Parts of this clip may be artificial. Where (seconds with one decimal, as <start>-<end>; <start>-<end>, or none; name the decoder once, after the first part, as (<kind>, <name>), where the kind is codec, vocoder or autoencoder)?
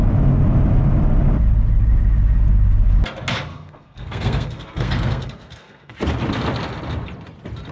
3.5-5.9 (codec, SNAC)